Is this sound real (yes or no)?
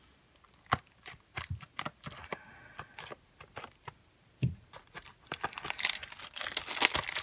yes